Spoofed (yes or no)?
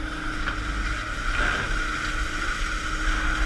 no